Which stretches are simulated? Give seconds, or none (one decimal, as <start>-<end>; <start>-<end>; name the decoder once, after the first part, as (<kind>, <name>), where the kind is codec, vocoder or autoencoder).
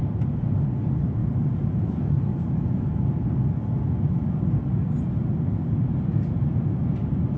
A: none